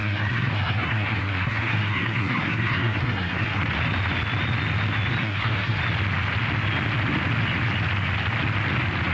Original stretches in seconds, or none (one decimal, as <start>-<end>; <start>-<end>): 3.6-5.2; 5.8-9.1